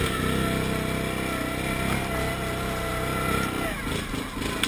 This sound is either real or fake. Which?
real